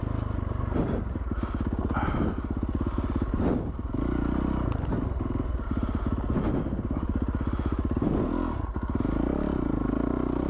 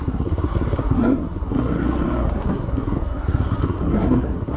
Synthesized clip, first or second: second